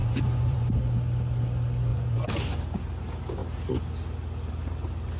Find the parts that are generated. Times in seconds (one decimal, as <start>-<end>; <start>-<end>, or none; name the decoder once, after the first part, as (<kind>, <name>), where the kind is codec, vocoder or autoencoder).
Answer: 0.0-0.7 (vocoder, Vocos); 1.9-2.6